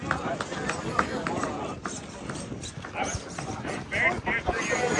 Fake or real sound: real